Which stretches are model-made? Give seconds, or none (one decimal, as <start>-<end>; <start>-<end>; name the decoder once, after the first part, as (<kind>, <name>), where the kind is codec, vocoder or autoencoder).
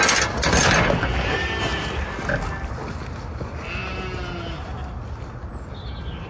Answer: none